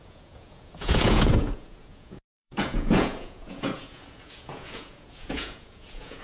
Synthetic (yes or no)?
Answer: yes